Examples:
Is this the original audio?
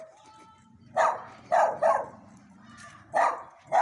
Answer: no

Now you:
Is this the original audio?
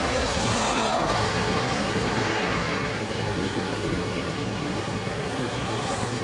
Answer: no